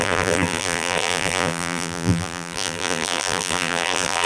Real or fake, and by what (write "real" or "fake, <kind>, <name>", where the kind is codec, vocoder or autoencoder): fake, vocoder, BigVGAN v2